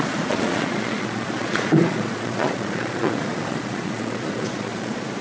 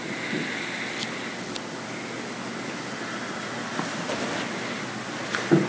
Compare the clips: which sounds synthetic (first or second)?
first